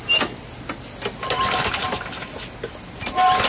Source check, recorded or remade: recorded